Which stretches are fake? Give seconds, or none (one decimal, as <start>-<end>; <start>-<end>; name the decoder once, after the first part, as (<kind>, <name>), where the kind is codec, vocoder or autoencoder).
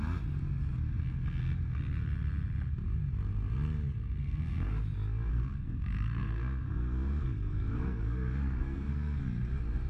4.2-4.8 (codec, SNAC); 5.3-9.2